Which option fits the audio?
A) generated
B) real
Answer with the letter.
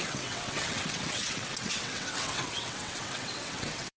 A